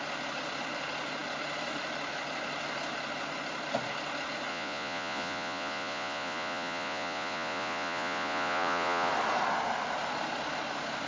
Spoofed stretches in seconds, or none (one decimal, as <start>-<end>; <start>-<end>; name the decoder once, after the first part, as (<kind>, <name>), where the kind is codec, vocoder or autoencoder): 4.5-9.1 (vocoder, Vocos)